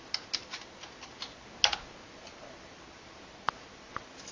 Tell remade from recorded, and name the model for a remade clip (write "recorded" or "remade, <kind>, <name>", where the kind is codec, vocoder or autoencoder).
recorded